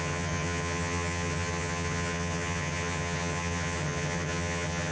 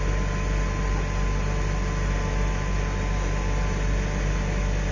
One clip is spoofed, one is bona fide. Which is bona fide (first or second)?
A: second